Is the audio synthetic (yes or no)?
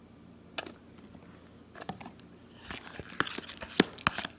no